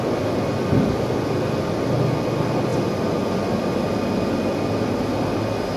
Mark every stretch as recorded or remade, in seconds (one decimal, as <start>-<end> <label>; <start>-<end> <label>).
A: 0.0-5.8 recorded